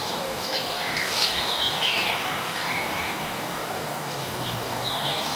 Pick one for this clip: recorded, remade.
remade